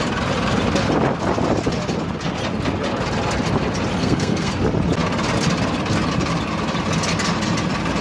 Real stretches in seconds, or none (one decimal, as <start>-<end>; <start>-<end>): 0.0-4.0; 4.5-8.0